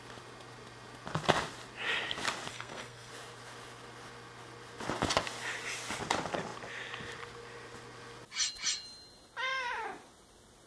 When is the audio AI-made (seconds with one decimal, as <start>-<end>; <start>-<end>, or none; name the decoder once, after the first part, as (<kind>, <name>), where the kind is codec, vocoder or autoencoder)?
2.5-3.1 (codec, SNAC)